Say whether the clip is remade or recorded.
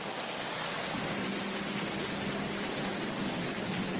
recorded